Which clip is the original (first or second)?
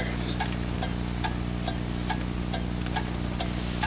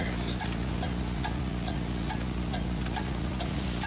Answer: first